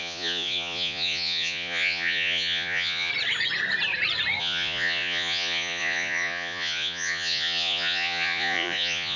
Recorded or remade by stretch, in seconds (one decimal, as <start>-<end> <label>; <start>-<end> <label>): 0.0-3.1 remade; 3.1-4.4 recorded; 4.4-9.2 remade